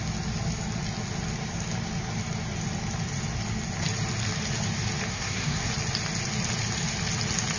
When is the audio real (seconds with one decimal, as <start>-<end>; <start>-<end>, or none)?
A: 0.0-5.1; 5.7-7.6

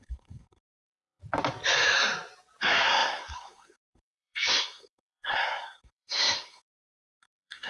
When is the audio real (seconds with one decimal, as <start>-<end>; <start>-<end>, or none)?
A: 1.2-2.6

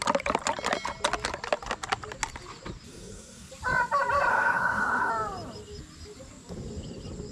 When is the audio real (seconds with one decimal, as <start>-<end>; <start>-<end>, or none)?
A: 0.0-2.9; 3.5-4.3; 5.1-7.3

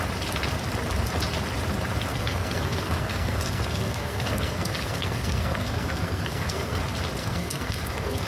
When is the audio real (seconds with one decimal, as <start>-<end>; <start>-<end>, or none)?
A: 0.0-2.1; 6.8-7.2